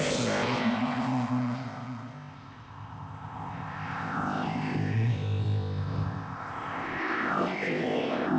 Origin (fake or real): fake